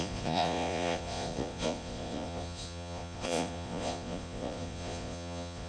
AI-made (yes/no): yes